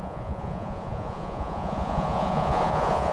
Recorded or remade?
remade